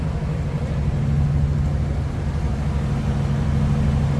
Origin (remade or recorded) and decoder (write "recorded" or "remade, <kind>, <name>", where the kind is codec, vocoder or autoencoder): recorded